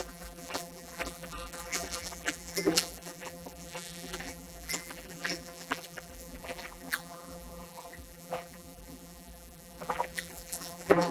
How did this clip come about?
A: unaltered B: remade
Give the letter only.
B